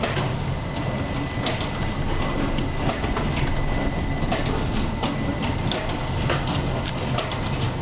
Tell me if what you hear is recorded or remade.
recorded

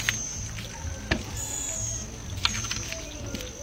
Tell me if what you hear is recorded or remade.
recorded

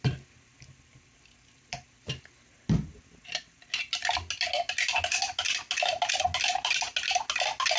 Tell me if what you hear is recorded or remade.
recorded